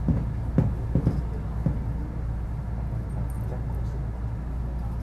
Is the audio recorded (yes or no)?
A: yes